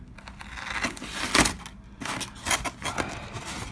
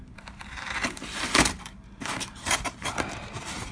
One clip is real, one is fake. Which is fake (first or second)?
second